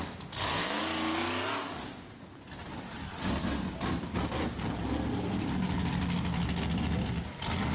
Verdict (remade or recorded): recorded